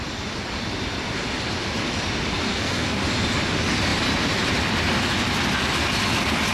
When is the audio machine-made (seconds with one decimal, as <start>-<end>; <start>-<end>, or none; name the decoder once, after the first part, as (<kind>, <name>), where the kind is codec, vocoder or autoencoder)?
2.5-3.0 (codec, SNAC)